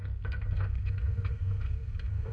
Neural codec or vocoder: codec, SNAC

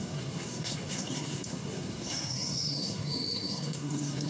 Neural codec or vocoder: codec, SNAC